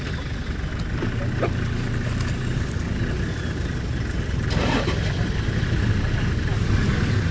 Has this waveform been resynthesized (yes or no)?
no